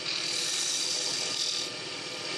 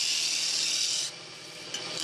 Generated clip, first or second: first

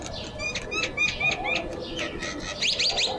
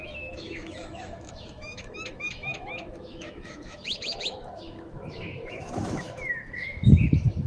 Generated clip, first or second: second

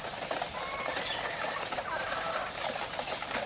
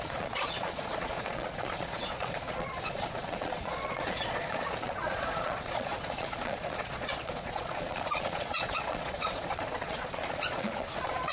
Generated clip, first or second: second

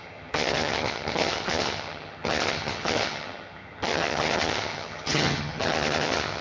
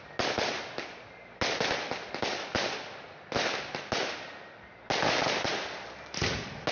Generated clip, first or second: first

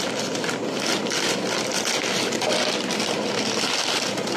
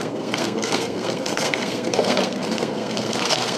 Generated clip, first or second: second